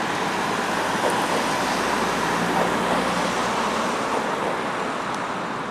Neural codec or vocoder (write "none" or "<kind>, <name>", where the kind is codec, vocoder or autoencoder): none